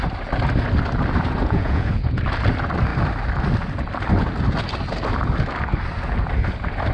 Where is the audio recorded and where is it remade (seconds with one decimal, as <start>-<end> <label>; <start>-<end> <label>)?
0.0-1.4 recorded; 1.4-2.2 remade; 2.2-6.9 recorded